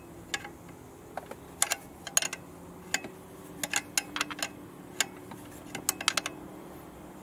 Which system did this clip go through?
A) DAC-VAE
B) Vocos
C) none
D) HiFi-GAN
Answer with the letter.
C